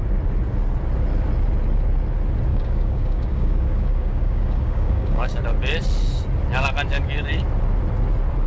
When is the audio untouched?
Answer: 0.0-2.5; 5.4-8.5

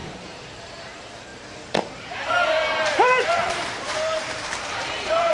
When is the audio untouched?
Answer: 1.3-1.9

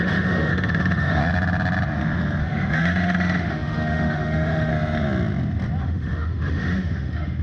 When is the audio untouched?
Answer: 1.2-2.4; 4.7-5.8